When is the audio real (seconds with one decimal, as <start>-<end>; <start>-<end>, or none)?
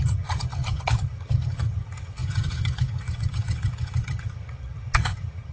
none